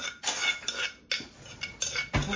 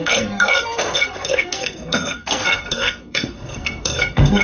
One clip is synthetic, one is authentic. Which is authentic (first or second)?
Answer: first